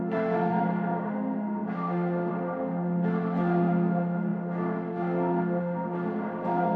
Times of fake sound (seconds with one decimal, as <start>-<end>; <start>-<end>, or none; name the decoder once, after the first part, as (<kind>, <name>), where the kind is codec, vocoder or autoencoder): 0.0-6.8 (autoencoder, DAC-VAE)